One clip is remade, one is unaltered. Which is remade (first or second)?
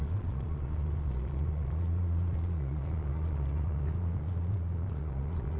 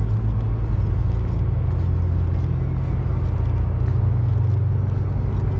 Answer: first